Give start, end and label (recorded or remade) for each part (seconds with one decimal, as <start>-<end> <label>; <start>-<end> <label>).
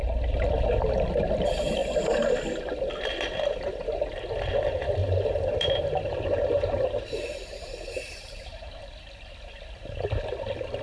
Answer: 0.0-5.0 recorded; 5.0-8.8 remade; 8.8-10.8 recorded